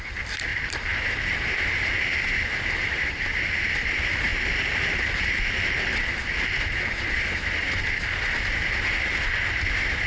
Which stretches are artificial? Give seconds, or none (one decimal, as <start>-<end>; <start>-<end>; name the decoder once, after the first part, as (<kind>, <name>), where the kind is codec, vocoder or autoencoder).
0.5-1.8 (vocoder, BigVGAN v2); 2.8-3.3